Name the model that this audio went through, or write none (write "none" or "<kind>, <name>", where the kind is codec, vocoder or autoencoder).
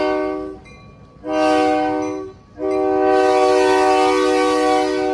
none